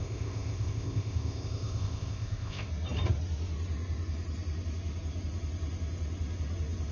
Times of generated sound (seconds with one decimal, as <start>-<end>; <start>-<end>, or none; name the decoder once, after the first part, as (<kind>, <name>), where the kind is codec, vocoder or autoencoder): 0.0-2.7 (codec, ZipCodec)